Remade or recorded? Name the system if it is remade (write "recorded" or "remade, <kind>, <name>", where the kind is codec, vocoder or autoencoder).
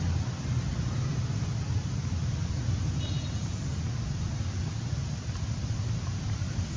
recorded